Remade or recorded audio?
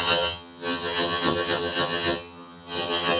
remade